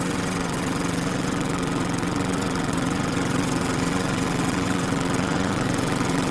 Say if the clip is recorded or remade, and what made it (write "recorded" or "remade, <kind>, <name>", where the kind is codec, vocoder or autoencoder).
remade, vocoder, WaveNeXt